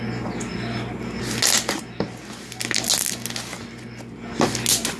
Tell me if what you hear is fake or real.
real